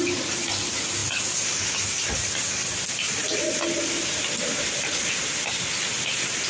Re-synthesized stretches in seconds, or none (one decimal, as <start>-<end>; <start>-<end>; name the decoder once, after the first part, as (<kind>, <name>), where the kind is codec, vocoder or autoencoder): none